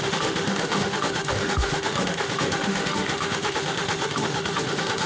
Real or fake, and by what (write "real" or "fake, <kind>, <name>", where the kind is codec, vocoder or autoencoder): fake, autoencoder, DAC-VAE